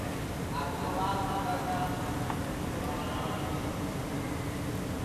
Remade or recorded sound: recorded